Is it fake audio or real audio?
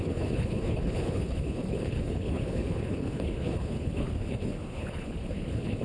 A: fake